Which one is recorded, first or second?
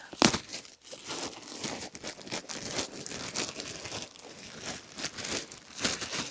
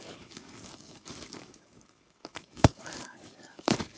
first